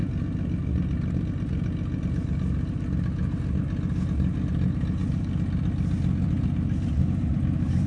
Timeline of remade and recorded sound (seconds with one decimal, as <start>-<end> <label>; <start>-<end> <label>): 0.0-7.9 recorded